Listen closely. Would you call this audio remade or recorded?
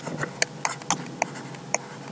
recorded